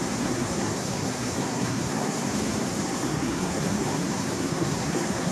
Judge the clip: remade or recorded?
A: remade